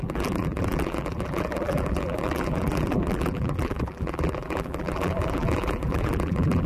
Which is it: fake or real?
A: fake